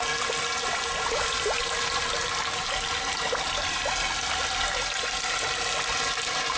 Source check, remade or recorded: recorded